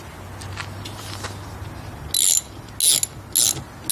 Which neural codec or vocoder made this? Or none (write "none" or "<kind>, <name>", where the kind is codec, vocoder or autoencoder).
none